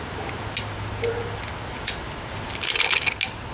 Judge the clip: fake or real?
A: real